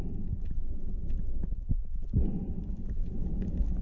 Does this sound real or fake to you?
real